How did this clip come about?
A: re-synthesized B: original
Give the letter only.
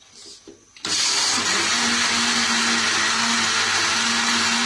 B